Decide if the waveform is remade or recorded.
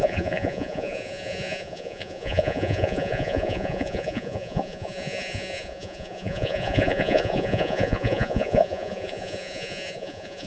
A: remade